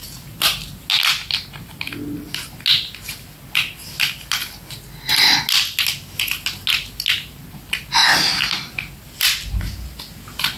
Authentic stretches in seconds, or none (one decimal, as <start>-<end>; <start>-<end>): 0.7-10.6